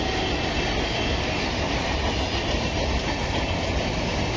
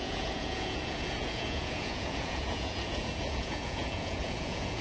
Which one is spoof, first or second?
second